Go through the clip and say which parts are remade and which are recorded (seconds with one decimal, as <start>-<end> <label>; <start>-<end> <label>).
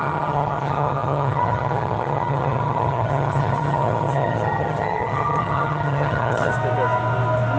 0.0-6.5 remade; 6.5-7.6 recorded